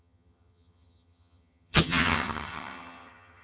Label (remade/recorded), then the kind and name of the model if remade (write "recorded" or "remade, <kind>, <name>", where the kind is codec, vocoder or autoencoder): remade, vocoder, HiFi-GAN